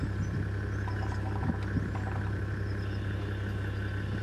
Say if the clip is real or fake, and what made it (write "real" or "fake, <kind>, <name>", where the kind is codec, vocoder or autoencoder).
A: real